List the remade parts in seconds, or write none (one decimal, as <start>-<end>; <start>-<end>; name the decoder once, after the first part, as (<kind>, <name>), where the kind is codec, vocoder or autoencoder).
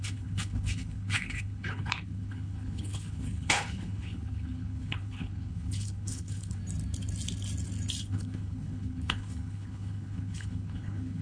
0.0-6.6 (codec, HILCodec); 8.0-11.2